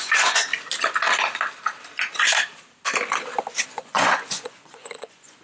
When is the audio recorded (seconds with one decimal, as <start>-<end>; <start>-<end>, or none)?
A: 0.5-3.7